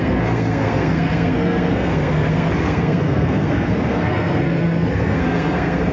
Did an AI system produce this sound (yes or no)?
yes